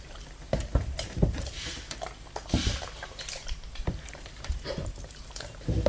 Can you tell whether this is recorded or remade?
remade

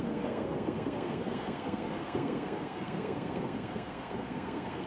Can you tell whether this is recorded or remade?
remade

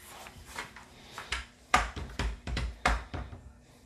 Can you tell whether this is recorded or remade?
remade